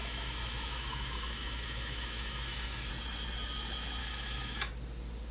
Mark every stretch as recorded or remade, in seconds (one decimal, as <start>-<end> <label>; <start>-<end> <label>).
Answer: 0.0-2.9 remade; 2.9-4.0 recorded; 4.0-4.7 remade; 4.7-5.3 recorded